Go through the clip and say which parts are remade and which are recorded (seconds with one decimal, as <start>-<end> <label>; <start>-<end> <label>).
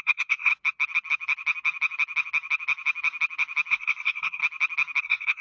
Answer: 0.0-0.5 remade; 0.5-3.7 recorded; 3.7-4.4 remade; 4.4-5.0 recorded; 5.0-5.4 remade